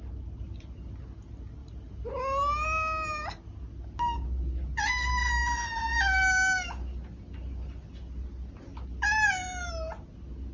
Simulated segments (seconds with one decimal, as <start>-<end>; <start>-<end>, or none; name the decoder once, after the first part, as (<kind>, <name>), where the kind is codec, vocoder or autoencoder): none

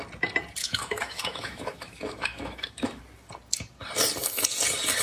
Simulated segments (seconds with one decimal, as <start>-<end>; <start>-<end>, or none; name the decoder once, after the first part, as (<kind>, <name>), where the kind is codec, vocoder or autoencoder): 0.6-3.0 (autoencoder, DAC-VAE)